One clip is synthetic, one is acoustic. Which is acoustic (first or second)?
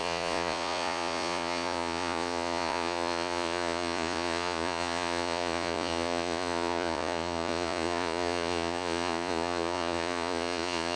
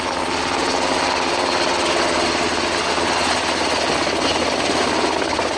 second